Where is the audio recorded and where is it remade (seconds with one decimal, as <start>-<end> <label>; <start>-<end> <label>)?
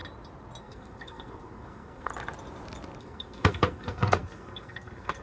0.0-0.6 recorded; 0.6-2.1 remade; 2.1-3.0 recorded; 3.0-5.2 remade